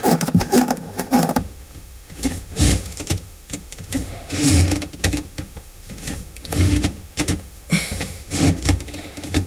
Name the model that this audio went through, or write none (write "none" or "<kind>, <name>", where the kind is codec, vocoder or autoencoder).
autoencoder, DAC-VAE